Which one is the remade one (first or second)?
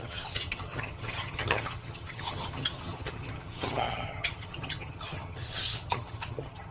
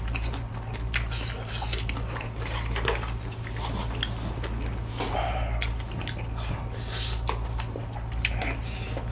first